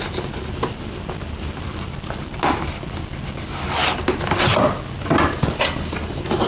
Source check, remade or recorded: recorded